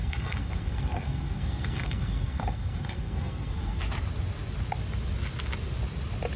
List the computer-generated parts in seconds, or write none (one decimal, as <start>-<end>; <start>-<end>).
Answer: 0.0-3.8